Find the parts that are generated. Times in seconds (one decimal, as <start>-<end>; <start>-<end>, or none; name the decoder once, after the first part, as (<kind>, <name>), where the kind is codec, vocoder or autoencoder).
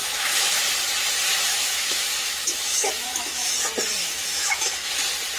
0.0-0.6 (autoencoder, DAC-VAE); 1.5-3.5; 4.0-4.9